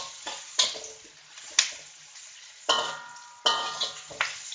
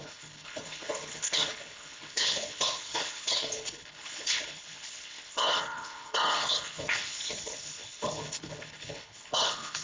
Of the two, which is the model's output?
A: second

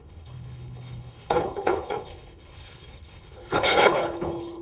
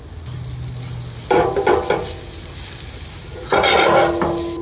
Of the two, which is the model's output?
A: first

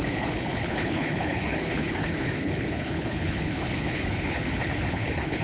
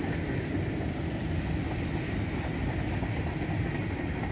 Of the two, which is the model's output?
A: first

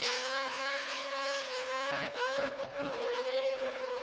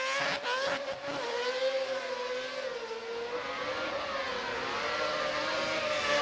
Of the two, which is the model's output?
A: first